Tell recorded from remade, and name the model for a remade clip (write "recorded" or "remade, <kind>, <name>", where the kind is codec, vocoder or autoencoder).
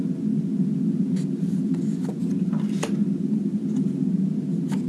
recorded